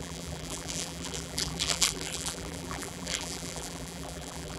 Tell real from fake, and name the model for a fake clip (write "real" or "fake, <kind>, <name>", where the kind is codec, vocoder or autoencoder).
fake, vocoder, BigVGAN v2